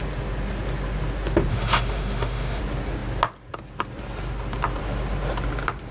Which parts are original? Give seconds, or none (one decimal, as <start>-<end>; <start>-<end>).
0.0-1.5; 2.6-5.9